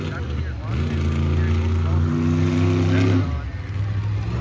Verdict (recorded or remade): recorded